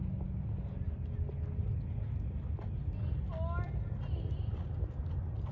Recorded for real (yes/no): yes